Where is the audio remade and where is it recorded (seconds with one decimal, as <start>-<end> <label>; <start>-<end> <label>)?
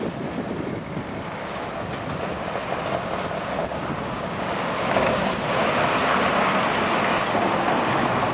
0.0-3.6 recorded; 3.6-5.3 remade; 5.3-8.3 recorded